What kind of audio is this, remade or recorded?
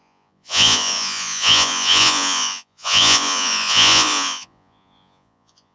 remade